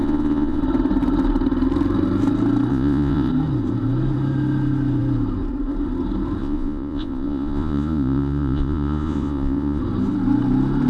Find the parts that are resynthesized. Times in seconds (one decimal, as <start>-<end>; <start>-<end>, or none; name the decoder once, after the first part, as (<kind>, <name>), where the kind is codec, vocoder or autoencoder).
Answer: 0.0-0.6 (vocoder, Vocos); 2.7-3.3; 6.4-9.8